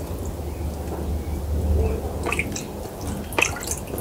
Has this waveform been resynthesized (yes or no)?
no